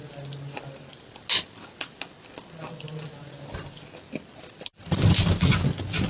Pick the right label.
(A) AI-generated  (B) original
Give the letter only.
B